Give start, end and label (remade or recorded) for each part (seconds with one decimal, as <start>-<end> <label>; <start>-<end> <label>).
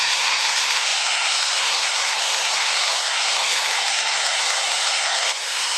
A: 0.0-5.8 remade